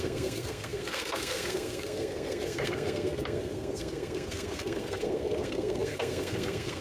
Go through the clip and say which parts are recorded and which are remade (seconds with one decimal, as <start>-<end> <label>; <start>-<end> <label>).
0.0-6.8 remade